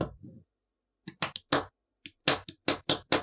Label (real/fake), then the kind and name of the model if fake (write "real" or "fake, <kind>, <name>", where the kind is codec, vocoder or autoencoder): real